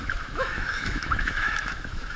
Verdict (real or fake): fake